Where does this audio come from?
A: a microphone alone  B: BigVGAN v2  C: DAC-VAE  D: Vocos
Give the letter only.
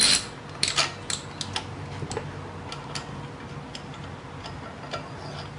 A